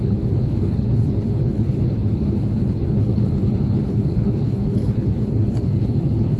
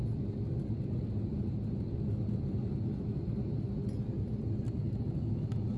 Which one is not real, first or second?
first